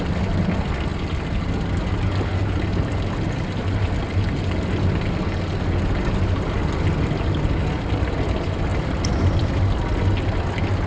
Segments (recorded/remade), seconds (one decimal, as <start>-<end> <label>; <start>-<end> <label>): 0.0-8.7 recorded; 8.7-10.0 remade; 10.0-10.9 recorded